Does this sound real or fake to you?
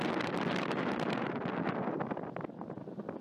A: real